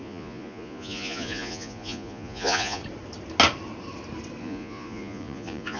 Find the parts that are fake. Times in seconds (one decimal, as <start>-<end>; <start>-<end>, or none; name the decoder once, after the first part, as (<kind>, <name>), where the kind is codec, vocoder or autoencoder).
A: 0.0-2.8 (vocoder, Vocos); 4.4-5.8